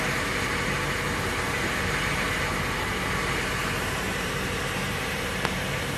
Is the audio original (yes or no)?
no